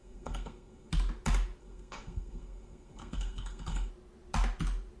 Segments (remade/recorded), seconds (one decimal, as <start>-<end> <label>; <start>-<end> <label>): 0.0-0.9 remade; 0.9-1.6 recorded; 1.6-3.9 remade; 3.9-5.0 recorded